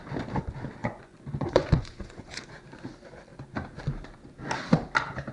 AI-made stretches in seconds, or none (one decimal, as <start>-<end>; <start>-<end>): 0.8-2.5